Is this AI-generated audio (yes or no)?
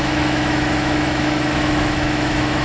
yes